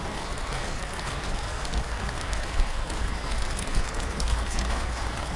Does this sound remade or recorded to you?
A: remade